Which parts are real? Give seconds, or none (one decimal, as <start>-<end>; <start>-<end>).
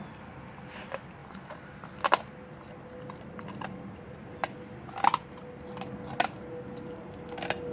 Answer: 0.0-7.7